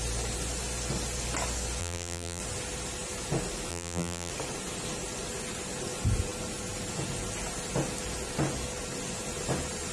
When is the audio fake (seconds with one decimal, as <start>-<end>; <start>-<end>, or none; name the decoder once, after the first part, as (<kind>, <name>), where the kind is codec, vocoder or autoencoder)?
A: 1.8-2.4 (vocoder, BigVGAN v2); 3.7-4.3